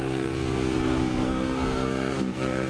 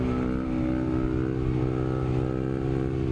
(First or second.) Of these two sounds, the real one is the second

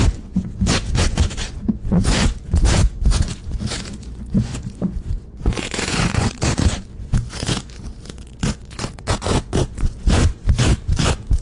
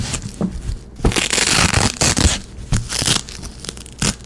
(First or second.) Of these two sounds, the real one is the second